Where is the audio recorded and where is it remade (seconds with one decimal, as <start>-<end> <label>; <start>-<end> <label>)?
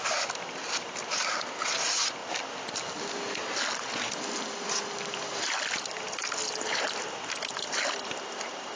0.0-8.8 recorded